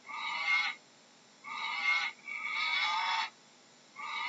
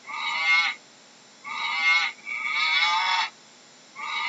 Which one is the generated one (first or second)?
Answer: first